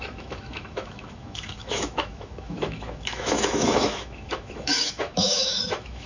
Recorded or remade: remade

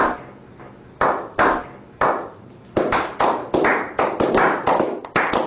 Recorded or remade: recorded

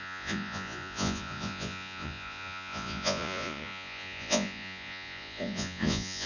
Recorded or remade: remade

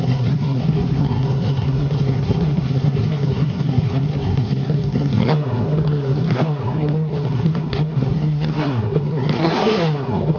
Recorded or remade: remade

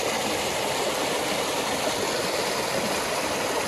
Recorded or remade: recorded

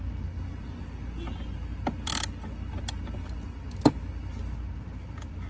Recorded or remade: recorded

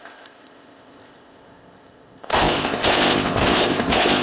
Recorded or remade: remade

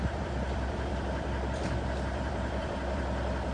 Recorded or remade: remade